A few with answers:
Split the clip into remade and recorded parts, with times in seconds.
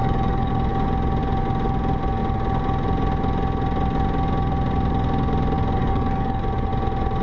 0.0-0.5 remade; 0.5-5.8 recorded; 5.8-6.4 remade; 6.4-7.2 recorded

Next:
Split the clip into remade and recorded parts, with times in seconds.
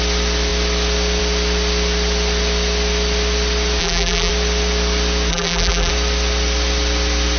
0.0-3.8 recorded; 3.8-4.3 remade; 4.3-5.3 recorded; 5.3-5.9 remade; 5.9-7.4 recorded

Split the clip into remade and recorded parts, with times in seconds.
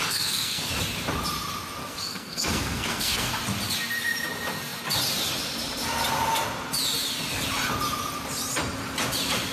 0.0-0.7 remade; 0.7-1.8 recorded; 1.8-3.3 remade; 3.3-9.5 recorded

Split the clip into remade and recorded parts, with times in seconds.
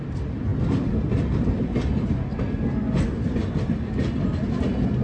0.0-5.0 recorded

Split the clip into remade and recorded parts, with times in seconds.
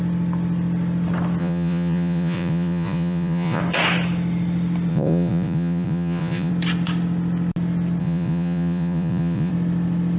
0.0-1.4 recorded; 1.4-3.6 remade; 3.6-4.9 recorded; 4.9-6.5 remade; 6.5-8.0 recorded; 8.0-9.5 remade; 9.5-10.2 recorded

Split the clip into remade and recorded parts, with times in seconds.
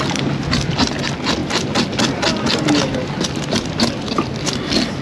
0.0-5.0 recorded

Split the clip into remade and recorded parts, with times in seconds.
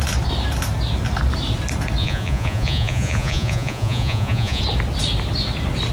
0.0-2.0 recorded; 2.0-4.6 remade; 4.6-5.9 recorded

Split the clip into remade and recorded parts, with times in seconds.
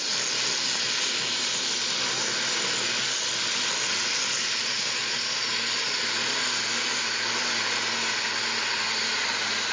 0.0-4.6 recorded; 4.6-5.5 remade; 5.5-9.7 recorded